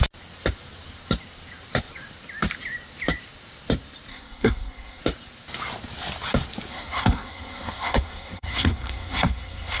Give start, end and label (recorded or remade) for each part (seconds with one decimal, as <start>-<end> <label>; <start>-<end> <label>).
0.0-4.1 recorded; 4.1-5.0 remade; 5.0-6.7 recorded; 6.7-9.8 remade